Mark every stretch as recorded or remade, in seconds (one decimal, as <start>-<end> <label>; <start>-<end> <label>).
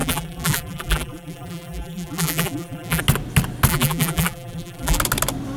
0.0-3.0 remade; 3.0-3.7 recorded; 3.7-5.0 remade; 5.0-5.6 recorded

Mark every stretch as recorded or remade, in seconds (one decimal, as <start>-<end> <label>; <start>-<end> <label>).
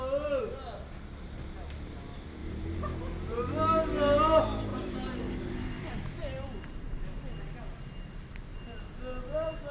0.0-2.4 recorded; 2.4-3.4 remade; 3.4-4.7 recorded; 4.7-7.0 remade; 7.0-9.7 recorded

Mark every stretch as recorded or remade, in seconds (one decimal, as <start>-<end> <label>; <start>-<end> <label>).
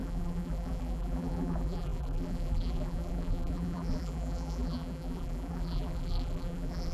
0.0-6.9 remade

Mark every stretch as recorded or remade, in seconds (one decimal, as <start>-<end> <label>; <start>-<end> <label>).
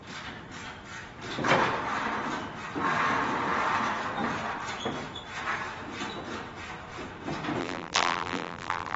0.0-7.6 recorded; 7.6-9.0 remade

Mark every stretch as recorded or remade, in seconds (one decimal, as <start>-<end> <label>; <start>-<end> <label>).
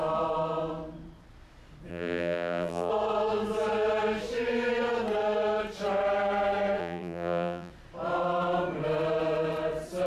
0.0-1.9 recorded; 1.9-2.9 remade; 2.9-6.8 recorded; 6.8-7.7 remade; 7.7-10.1 recorded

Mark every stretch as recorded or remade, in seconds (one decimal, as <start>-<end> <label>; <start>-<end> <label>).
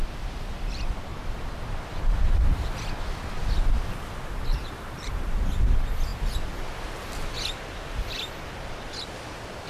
0.0-4.5 recorded; 4.5-5.5 remade; 5.5-9.7 recorded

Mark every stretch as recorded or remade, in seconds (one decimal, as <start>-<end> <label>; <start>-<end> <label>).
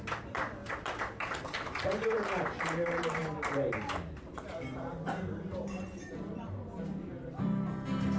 0.0-8.2 remade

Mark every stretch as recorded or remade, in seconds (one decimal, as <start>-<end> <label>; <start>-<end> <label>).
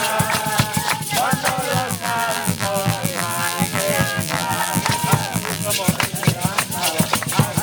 0.0-1.7 recorded; 1.7-4.8 remade; 4.8-5.2 recorded; 5.2-5.7 remade; 5.7-7.6 recorded